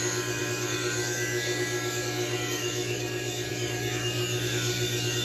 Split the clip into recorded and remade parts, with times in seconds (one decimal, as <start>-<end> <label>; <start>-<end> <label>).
0.0-5.2 remade